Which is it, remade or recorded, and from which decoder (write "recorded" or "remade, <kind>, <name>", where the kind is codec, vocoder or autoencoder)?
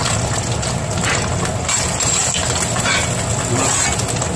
recorded